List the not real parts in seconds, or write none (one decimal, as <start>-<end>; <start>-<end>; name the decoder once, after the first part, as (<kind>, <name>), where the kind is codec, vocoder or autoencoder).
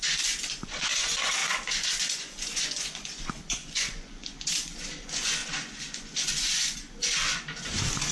0.0-8.1 (vocoder, Vocos)